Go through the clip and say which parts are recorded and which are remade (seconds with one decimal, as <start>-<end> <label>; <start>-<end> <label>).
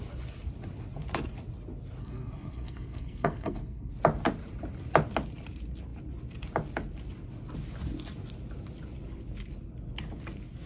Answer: 0.0-2.0 recorded; 2.0-3.9 remade; 3.9-10.7 recorded